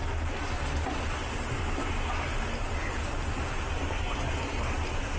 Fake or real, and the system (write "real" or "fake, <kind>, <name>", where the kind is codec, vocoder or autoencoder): real